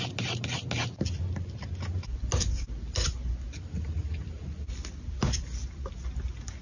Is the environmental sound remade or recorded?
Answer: recorded